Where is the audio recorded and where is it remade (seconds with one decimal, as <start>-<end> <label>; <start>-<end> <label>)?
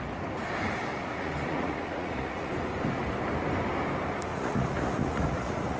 0.0-0.9 recorded; 0.9-2.5 remade; 2.5-4.3 recorded; 4.3-5.8 remade